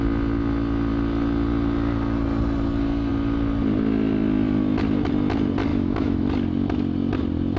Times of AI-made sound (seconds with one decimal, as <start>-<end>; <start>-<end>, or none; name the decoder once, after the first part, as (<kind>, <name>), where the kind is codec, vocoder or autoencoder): 5.7-6.3 (autoencoder, DAC-VAE)